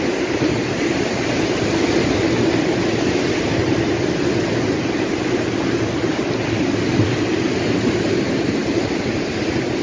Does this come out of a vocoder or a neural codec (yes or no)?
no